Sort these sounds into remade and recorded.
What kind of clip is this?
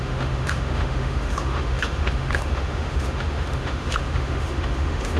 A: remade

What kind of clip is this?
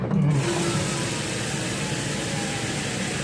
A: recorded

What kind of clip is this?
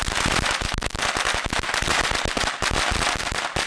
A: recorded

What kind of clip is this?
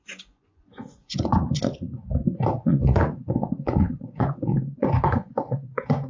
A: remade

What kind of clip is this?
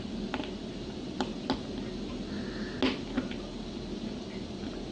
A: recorded